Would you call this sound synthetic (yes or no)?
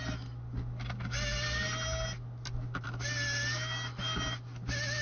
no